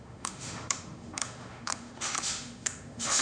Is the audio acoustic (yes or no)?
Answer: no